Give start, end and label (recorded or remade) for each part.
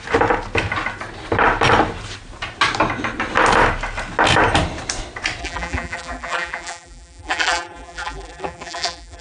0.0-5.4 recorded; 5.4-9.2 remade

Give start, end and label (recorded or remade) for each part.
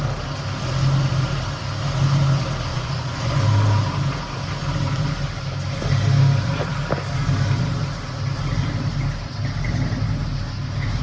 0.0-2.7 recorded; 2.7-3.4 remade; 3.4-11.0 recorded